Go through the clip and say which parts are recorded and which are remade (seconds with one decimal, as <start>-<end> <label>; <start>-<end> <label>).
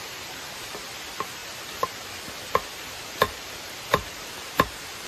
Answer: 0.0-5.1 remade